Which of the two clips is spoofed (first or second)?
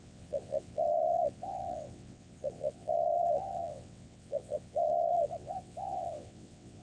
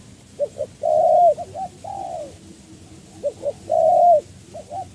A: first